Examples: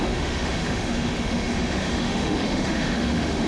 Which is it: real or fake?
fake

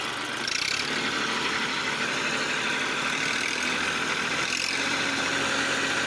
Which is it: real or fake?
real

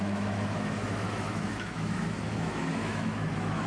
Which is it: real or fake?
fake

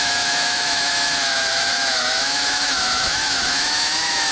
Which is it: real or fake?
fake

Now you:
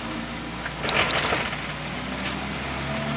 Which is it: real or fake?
real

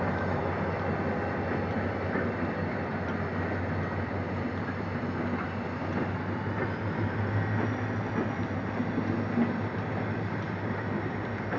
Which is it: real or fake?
real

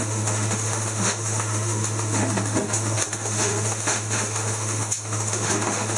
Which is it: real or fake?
fake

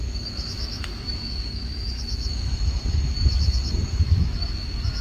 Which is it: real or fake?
fake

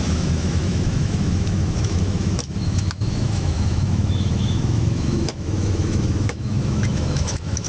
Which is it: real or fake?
fake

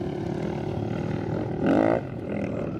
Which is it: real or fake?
real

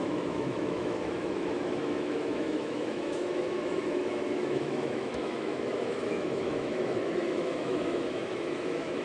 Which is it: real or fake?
fake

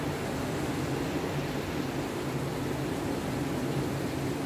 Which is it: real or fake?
real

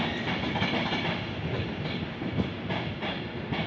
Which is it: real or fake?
real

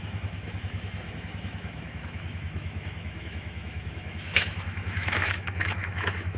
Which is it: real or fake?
fake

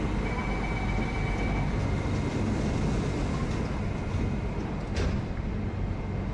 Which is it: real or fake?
real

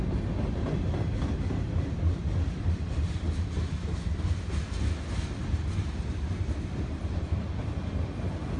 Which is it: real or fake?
real